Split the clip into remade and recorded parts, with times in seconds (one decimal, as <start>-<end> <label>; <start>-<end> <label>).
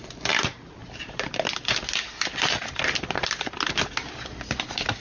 0.0-5.0 recorded